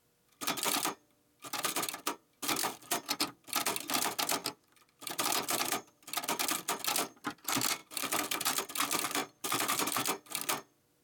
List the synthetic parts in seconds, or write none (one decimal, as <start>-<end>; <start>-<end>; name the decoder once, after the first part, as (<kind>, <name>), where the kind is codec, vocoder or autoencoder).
2.6-3.2 (vocoder, BigVGAN v2); 4.4-5.6; 7.8-8.6; 9.2-9.7